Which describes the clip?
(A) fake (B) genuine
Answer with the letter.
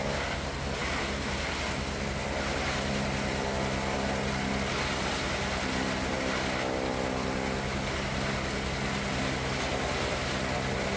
B